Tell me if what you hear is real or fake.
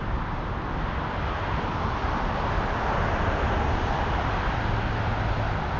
real